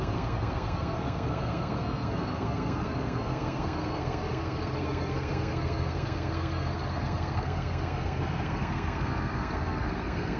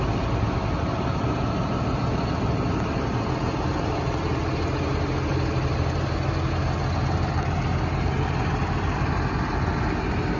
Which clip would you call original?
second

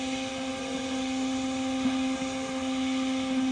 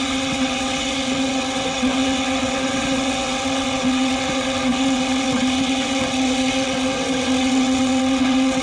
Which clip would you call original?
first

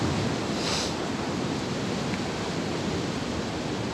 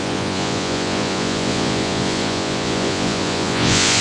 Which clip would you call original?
first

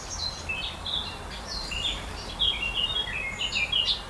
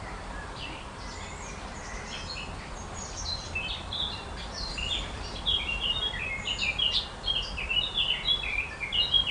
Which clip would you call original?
first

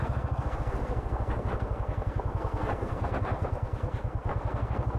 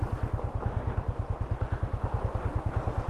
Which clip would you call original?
second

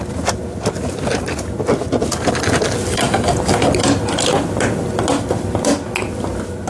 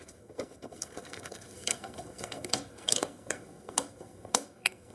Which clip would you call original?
first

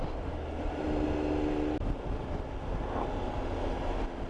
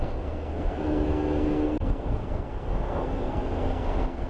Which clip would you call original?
first